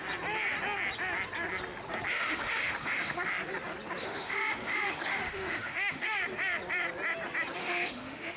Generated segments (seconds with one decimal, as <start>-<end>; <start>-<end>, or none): 2.1-3.3; 4.0-6.2; 7.6-8.4